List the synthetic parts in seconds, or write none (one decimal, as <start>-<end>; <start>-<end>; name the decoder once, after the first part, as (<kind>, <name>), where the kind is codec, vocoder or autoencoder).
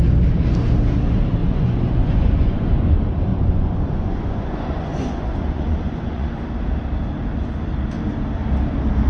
1.4-2.9 (vocoder, Vocos); 3.3-6.4